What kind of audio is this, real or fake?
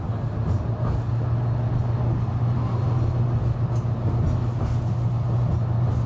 real